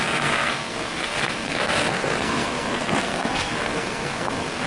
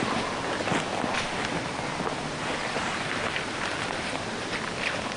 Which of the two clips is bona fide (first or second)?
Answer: second